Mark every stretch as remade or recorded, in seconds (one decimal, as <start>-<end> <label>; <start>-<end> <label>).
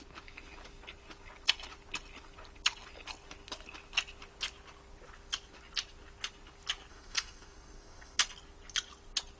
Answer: 0.0-6.9 recorded; 6.9-8.2 remade; 8.2-9.4 recorded